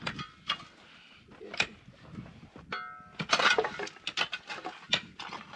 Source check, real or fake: real